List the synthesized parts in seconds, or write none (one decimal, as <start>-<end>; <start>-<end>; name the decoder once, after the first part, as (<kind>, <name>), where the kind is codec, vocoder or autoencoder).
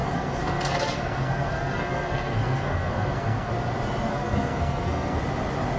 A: 0.0-3.5 (codec, SNAC); 4.1-5.2